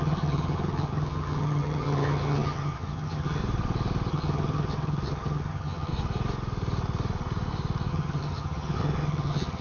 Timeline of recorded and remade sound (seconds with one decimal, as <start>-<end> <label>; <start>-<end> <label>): 0.0-3.4 remade; 3.4-4.1 recorded; 4.1-5.9 remade; 5.9-7.9 recorded; 7.9-9.6 remade